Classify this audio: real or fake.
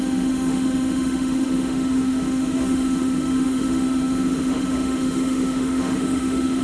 fake